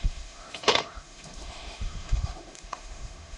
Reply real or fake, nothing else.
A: fake